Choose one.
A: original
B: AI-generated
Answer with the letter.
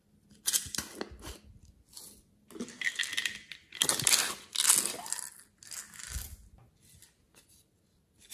A